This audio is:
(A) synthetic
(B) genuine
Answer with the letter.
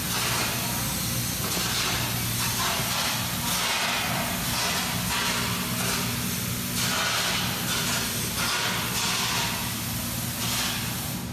B